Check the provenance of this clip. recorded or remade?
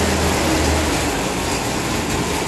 recorded